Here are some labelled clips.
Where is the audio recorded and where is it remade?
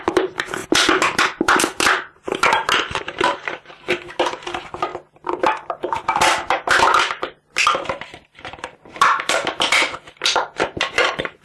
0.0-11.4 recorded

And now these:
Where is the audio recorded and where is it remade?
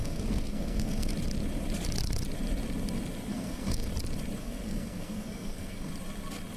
0.0-1.1 remade; 1.1-3.3 recorded; 3.3-3.9 remade; 3.9-4.4 recorded; 4.4-5.9 remade; 5.9-6.6 recorded